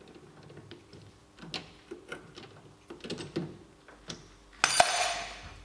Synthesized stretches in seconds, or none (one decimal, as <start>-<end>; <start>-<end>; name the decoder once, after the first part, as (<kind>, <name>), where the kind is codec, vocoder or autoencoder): none

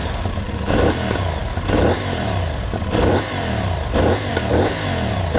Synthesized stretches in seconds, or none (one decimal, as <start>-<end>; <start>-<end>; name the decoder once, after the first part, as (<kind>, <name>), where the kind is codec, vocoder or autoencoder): 1.4-4.3 (vocoder, BigVGAN v2)

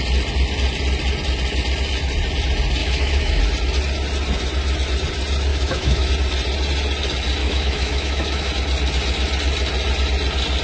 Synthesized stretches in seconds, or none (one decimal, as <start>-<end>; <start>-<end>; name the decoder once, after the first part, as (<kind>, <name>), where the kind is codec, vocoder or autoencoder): 2.8-3.4 (autoencoder, DAC-VAE); 5.5-6.1; 7.4-8.5